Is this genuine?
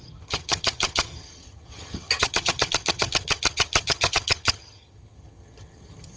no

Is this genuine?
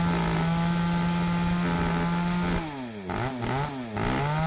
yes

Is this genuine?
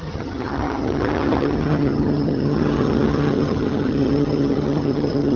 no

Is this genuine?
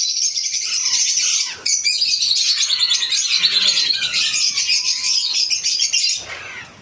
yes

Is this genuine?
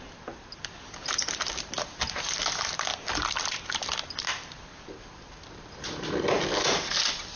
yes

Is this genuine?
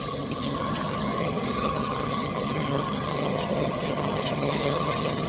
no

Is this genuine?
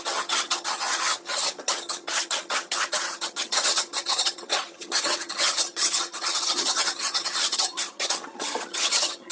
no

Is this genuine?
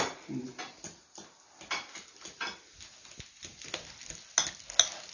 yes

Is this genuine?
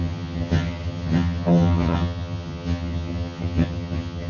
no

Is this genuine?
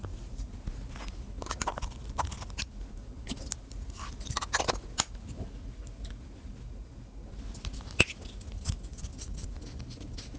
yes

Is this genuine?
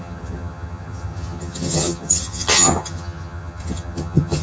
no